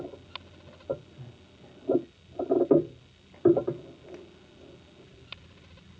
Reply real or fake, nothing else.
real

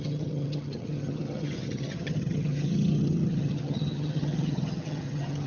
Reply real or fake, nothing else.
fake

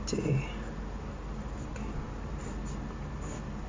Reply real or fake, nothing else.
real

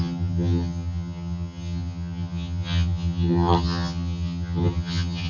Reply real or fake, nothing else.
fake